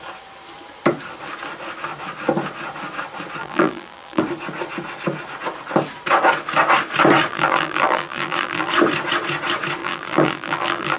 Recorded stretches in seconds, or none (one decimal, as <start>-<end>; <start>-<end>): 0.0-3.4; 4.2-7.3; 8.7-9.8